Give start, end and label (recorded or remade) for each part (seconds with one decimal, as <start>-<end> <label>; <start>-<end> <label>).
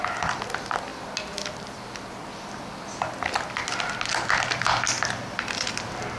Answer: 0.0-6.2 recorded